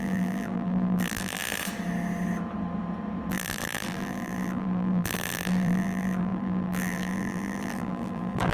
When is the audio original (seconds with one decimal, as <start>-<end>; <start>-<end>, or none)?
1.4-3.3